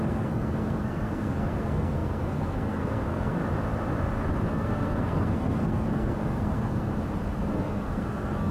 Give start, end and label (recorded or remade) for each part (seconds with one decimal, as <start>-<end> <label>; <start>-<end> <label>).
0.0-3.4 remade; 3.4-4.5 recorded; 4.5-6.9 remade; 6.9-7.5 recorded; 7.5-8.5 remade